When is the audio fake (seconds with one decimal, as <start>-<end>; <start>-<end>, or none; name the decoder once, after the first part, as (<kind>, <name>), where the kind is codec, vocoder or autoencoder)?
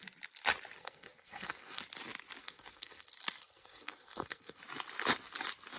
0.8-1.8 (codec, SNAC); 2.4-4.6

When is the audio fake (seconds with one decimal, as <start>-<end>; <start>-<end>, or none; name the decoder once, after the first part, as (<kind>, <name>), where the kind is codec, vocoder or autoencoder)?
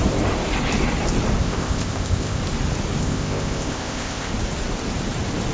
1.4-2.4 (codec, ZipCodec); 3.0-4.3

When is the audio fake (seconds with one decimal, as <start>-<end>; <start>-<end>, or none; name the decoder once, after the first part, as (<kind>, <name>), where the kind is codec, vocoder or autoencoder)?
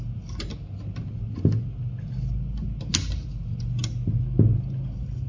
none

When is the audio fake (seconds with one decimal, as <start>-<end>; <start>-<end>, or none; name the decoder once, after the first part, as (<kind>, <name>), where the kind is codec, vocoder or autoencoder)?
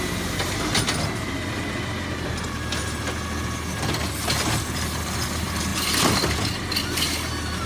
none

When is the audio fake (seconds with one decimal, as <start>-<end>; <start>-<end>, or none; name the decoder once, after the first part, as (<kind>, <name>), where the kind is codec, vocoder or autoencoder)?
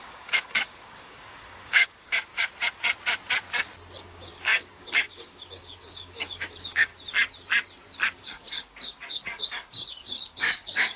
0.0-2.3 (codec, DAC); 4.0-6.9; 8.1-11.0